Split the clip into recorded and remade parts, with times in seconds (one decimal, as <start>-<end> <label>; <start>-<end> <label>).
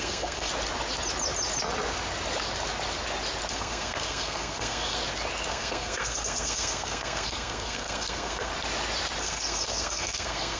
0.0-0.5 remade; 0.5-3.5 recorded; 3.5-5.0 remade; 5.0-5.5 recorded; 5.5-8.5 remade; 8.5-9.2 recorded; 9.2-10.6 remade